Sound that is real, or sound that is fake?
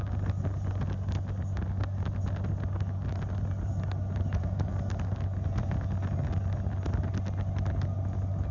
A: real